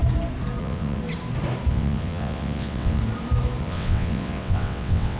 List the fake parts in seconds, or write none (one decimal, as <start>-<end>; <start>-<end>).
0.6-1.0; 1.7-3.0; 3.6-5.2